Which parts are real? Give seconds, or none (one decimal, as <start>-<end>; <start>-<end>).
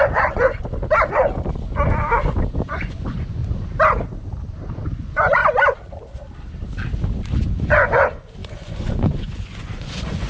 0.6-2.7; 3.4-4.8; 5.4-7.4